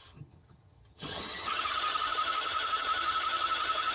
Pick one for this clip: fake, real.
fake